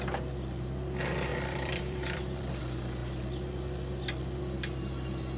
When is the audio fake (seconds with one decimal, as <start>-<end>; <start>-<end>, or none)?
1.3-2.6

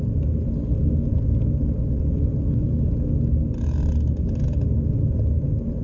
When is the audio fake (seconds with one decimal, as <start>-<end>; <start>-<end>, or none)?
none

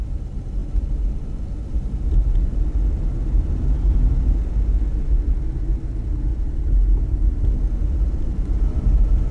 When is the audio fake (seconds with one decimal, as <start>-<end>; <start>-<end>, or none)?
none

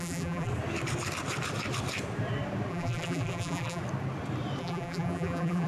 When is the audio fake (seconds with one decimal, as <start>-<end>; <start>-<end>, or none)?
0.0-0.5; 2.7-3.8; 4.6-5.7

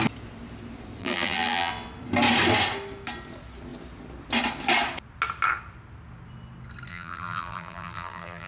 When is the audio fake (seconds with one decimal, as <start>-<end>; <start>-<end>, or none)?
1.0-1.7; 6.9-8.5

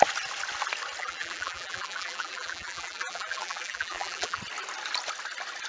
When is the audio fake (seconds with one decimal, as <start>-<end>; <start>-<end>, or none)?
1.0-4.4

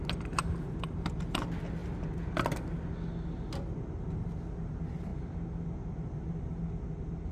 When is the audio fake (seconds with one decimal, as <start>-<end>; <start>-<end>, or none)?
none